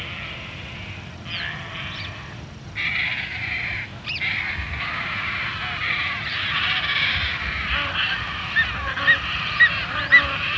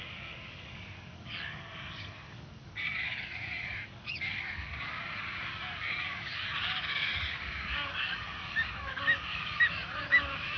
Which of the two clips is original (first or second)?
first